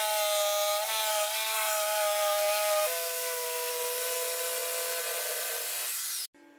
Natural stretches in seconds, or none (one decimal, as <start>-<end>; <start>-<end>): 0.0-1.1; 3.7-6.6

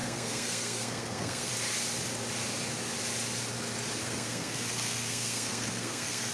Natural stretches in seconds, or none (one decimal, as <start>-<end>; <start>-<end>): 1.5-4.0